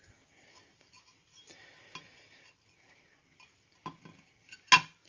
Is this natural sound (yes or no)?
yes